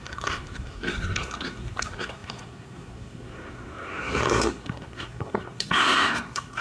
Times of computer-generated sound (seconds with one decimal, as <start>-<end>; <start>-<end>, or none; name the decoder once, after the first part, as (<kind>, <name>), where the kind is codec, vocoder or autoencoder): 0.0-6.6 (codec, SNAC)